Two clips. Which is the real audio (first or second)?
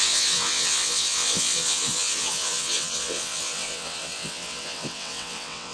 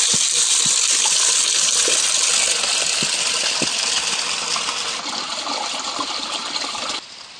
second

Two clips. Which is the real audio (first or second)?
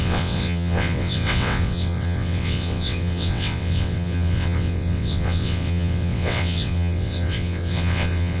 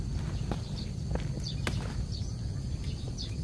second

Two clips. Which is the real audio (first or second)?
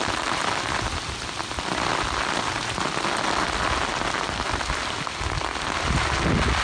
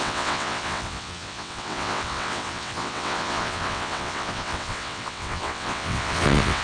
first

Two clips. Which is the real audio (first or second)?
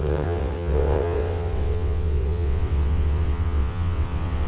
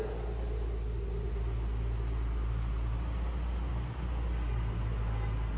second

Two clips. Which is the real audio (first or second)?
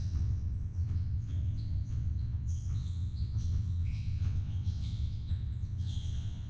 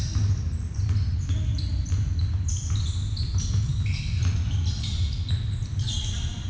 second